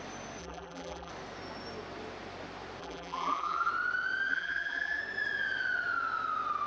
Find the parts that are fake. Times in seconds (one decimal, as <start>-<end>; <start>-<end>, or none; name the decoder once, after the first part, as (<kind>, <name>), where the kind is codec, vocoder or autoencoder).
0.4-1.1 (vocoder, BigVGAN v2); 2.8-3.7; 4.3-5.0